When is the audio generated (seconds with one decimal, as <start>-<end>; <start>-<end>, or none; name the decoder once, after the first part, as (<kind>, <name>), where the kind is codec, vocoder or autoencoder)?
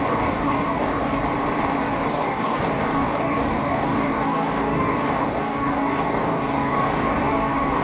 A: 0.0-1.2 (codec, DAC); 1.8-7.8